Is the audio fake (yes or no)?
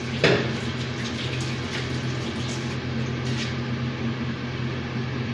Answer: no